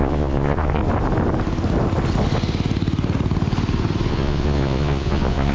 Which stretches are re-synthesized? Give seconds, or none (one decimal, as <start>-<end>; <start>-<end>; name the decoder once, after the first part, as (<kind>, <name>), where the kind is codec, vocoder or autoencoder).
0.0-0.8 (vocoder, Vocos); 4.1-5.5